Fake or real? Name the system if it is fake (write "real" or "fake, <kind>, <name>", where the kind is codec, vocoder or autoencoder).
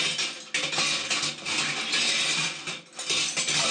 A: real